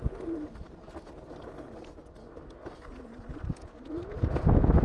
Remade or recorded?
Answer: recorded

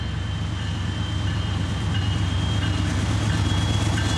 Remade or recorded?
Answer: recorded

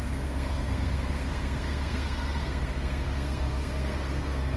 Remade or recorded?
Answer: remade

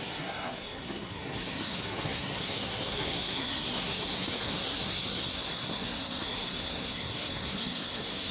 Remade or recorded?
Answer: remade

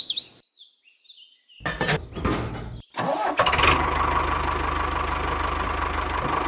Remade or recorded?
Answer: recorded